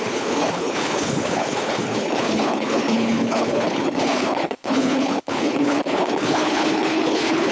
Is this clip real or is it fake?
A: fake